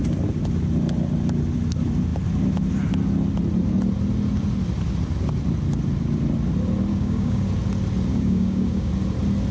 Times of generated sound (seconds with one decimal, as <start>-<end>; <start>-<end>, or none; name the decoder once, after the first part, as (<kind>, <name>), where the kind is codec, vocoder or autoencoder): 6.9-7.4 (codec, DAC); 8.1-8.9